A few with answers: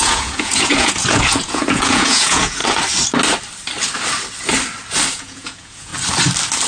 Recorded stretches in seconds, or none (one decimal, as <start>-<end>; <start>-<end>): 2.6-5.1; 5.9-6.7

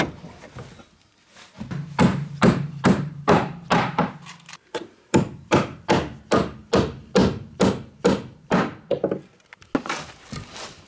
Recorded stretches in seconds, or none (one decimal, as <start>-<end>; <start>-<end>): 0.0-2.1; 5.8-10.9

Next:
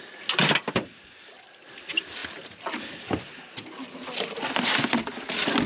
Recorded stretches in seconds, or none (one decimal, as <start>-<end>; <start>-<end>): 0.0-5.7

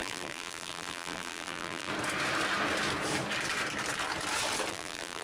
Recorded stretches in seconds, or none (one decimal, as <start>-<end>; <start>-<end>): 1.9-4.7

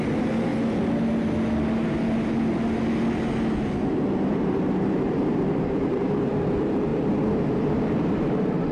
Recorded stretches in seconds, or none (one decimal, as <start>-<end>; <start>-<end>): 0.0-4.3; 6.3-6.9

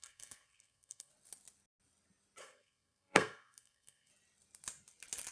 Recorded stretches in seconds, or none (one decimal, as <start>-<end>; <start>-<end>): 1.1-2.4; 4.1-5.3

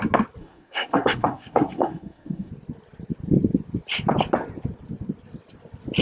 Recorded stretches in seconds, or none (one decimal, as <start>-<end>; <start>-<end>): 0.0-0.4; 2.5-6.0